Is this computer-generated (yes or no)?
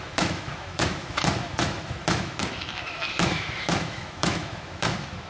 yes